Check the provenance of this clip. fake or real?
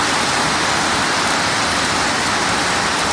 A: real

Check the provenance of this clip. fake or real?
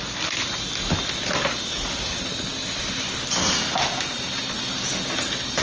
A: real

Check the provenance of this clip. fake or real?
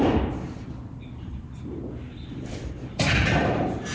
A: fake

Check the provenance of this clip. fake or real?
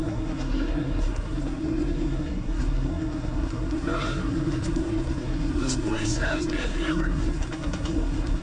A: fake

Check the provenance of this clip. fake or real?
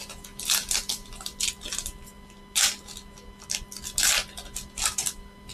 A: real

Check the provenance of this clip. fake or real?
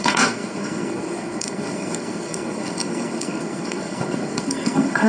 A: fake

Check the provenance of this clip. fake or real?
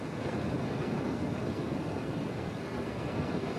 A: fake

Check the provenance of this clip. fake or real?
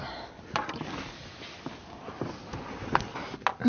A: real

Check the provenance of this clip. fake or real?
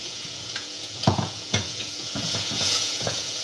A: fake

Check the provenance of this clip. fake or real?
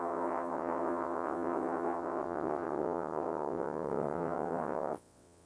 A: fake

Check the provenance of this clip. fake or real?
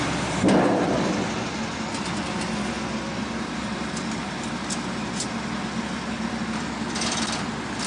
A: real